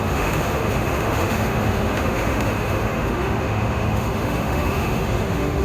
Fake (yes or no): yes